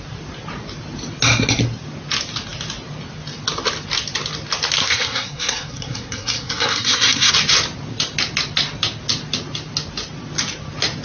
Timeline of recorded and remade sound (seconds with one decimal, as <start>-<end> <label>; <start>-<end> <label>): 0.0-4.8 recorded; 4.8-7.3 remade; 7.3-11.0 recorded